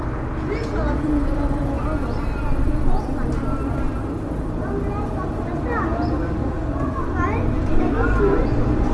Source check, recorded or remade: recorded